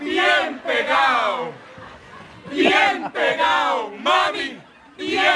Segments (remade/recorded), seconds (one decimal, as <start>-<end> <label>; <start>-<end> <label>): 0.0-1.9 recorded; 1.9-2.8 remade; 2.8-5.4 recorded

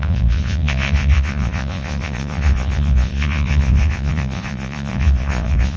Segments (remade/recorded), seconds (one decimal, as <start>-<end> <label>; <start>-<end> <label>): 0.0-5.8 remade

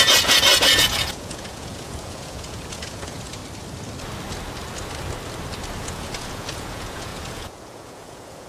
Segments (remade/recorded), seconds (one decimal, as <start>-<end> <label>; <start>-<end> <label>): 0.0-3.4 remade; 3.4-5.8 recorded; 5.8-8.5 remade

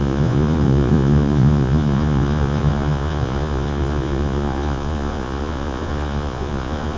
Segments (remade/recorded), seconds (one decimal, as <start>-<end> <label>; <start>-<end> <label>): 0.0-7.0 remade